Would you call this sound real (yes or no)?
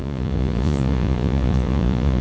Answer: no